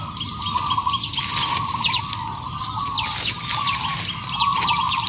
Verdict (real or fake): real